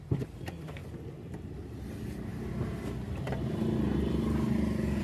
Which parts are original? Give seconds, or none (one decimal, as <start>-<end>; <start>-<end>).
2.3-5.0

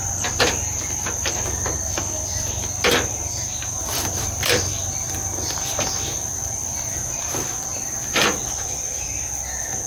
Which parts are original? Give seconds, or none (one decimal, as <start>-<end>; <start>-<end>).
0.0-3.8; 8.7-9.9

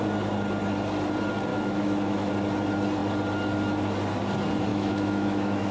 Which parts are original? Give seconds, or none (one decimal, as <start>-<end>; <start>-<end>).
0.0-1.5; 2.3-4.7

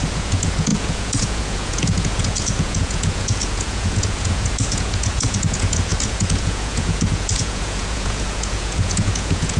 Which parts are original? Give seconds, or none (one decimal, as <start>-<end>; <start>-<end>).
none

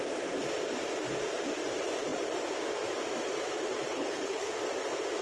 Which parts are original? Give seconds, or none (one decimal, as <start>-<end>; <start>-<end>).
0.0-3.9; 4.5-5.2